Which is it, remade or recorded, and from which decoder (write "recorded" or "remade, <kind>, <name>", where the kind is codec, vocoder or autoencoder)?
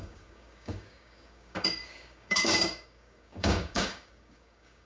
remade, codec, DAC